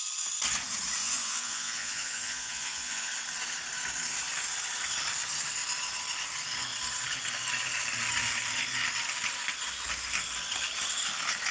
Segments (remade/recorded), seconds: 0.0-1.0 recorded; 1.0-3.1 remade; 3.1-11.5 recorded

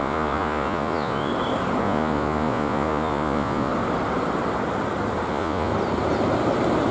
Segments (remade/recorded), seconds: 0.0-1.3 remade; 1.3-1.8 recorded; 1.8-3.7 remade; 3.7-5.3 recorded; 5.3-5.7 remade; 5.7-6.9 recorded

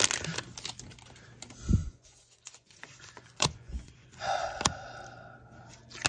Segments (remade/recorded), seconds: 0.0-1.8 recorded; 1.8-4.3 remade; 4.3-6.1 recorded

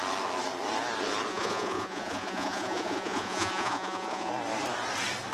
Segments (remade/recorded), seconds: 0.0-1.3 recorded; 1.3-4.3 remade; 4.3-5.3 recorded

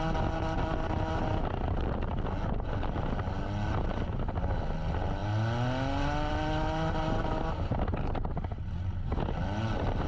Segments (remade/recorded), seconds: 0.0-10.1 recorded

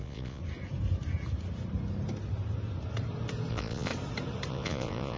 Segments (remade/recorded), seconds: 0.0-0.4 remade; 0.4-3.5 recorded; 3.5-3.9 remade; 3.9-4.5 recorded; 4.5-5.2 remade

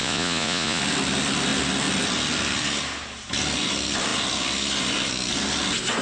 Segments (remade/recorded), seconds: 0.0-0.8 remade; 0.8-6.0 recorded

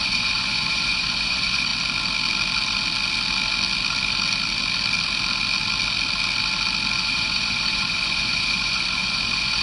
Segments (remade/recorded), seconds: 0.0-1.7 remade; 1.7-7.0 recorded; 7.0-9.6 remade